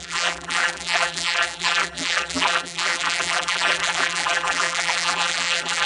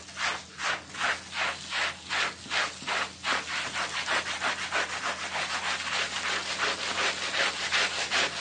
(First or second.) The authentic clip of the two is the second